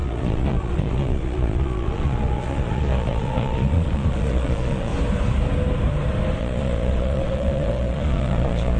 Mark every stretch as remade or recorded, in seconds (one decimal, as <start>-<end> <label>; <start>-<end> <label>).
0.0-4.9 remade; 4.9-6.4 recorded; 6.4-8.8 remade